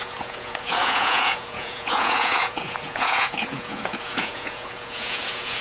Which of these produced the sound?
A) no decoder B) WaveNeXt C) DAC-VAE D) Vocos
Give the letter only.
D